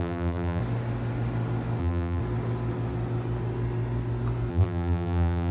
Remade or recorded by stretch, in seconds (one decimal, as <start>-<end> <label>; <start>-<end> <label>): 0.0-0.6 remade; 0.6-1.8 recorded; 1.8-2.2 remade; 2.2-4.5 recorded; 4.5-5.5 remade